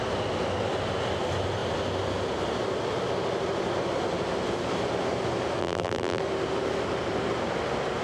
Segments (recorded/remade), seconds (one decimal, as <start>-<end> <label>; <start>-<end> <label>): 0.0-5.6 recorded; 5.6-6.2 remade; 6.2-8.0 recorded